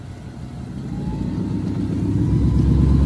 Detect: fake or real real